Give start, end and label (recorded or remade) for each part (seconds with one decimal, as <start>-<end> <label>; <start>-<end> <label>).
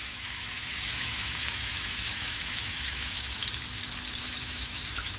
0.0-3.4 remade; 3.4-4.2 recorded; 4.2-5.2 remade